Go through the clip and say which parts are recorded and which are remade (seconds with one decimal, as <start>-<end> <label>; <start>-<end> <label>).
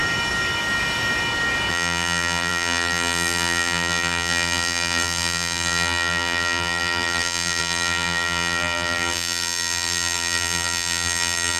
0.0-1.7 recorded; 1.7-11.6 remade